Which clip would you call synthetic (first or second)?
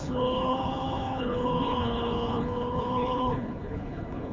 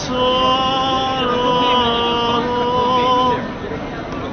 first